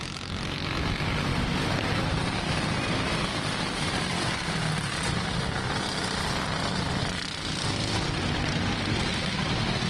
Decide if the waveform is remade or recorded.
recorded